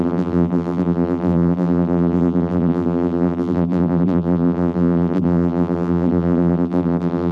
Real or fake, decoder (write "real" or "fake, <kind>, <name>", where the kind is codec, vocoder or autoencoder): fake, vocoder, BigVGAN v2